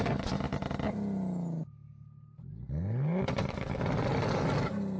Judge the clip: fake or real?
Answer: real